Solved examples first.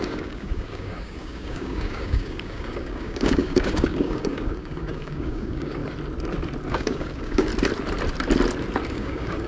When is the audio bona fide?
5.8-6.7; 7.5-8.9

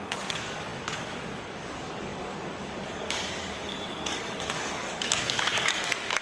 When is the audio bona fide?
none

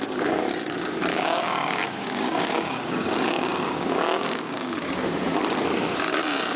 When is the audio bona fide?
0.0-1.1; 5.1-6.6

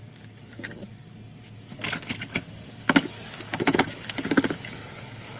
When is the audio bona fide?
none

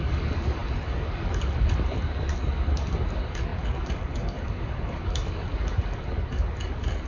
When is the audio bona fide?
none

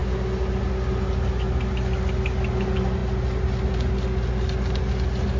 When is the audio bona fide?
0.0-5.4